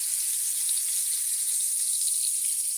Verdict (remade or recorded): recorded